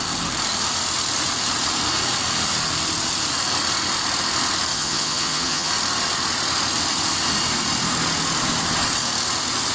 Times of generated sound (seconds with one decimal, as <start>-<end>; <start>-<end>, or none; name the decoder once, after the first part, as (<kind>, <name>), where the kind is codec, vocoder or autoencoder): 4.7-5.7 (vocoder, HiFi-GAN)